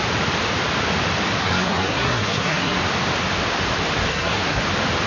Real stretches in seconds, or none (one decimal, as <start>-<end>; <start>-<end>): 0.0-1.4; 2.8-4.1; 4.6-5.1

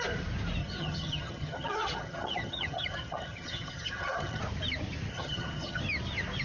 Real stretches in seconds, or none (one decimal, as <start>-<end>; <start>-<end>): 0.0-0.6; 4.4-5.1; 5.8-6.4

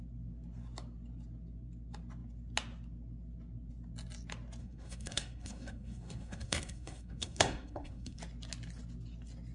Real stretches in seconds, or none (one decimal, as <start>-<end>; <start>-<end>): 0.0-4.6; 8.2-9.5

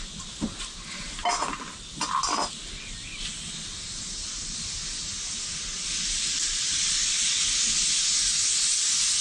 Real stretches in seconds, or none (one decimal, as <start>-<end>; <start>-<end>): 0.0-6.3; 7.2-9.2

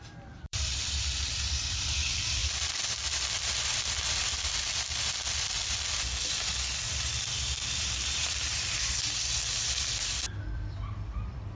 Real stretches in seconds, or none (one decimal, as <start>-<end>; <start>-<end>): 2.4-3.2; 4.3-9.4

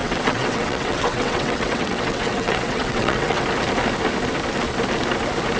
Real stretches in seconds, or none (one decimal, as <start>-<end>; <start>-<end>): 3.4-5.6